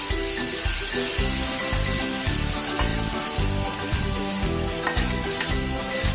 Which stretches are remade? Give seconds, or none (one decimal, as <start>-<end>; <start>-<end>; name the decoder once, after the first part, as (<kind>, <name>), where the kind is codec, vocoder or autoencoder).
2.9-4.0 (vocoder, BigVGAN v2)